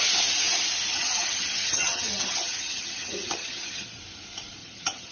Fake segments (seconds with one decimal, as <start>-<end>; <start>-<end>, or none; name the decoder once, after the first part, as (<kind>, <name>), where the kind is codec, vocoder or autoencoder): 0.9-4.0 (vocoder, HiFi-GAN); 4.6-5.1